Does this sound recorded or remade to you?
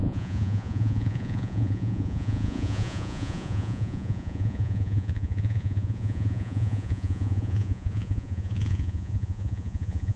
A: remade